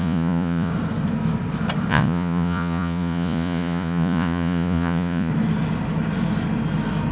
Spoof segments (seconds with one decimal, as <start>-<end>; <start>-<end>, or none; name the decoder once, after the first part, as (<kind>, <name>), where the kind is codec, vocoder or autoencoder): 0.0-0.7 (vocoder, Vocos); 1.9-5.3